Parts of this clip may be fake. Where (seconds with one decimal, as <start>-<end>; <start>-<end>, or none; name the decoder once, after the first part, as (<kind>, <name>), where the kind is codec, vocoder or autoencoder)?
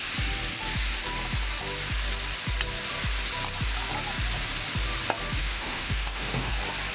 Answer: 5.4-6.5 (autoencoder, DAC-VAE)